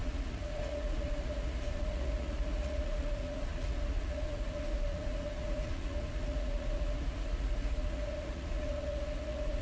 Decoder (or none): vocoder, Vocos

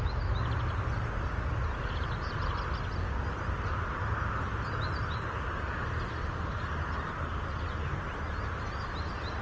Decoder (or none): none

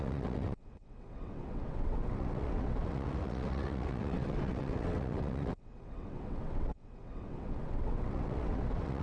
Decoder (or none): vocoder, WaveNeXt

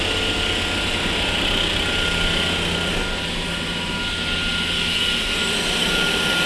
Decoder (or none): none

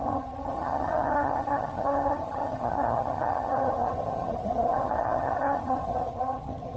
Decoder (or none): vocoder, HiFi-GAN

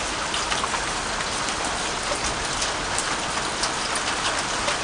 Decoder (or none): none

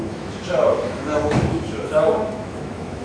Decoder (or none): autoencoder, DAC-VAE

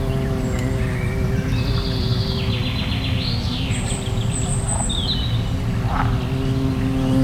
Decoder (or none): none